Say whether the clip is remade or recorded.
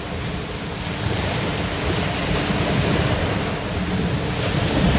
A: recorded